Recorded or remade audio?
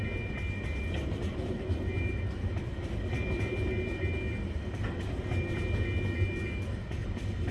recorded